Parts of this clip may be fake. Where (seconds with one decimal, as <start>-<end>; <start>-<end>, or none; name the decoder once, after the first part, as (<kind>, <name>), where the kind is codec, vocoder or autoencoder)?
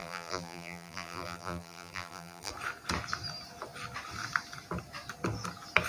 0.0-2.5 (vocoder, BigVGAN v2)